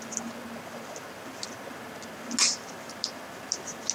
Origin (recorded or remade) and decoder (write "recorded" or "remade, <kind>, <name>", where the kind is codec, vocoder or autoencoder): recorded